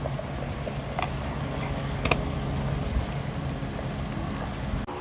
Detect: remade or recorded recorded